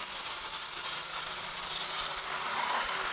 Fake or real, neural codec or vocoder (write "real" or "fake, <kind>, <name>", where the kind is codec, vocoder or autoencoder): fake, vocoder, BigVGAN v2